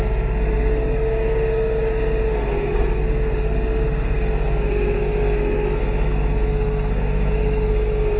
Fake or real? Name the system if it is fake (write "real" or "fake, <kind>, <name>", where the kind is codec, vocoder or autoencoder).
fake, codec, SNAC